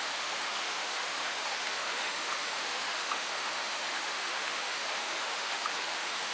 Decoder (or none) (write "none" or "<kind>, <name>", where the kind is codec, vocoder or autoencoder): autoencoder, DAC-VAE